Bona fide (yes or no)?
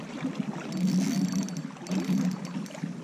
yes